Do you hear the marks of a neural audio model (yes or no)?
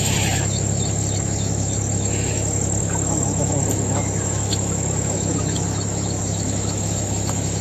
yes